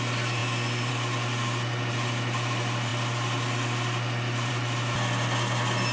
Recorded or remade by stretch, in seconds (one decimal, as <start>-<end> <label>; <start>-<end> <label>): 0.0-5.9 recorded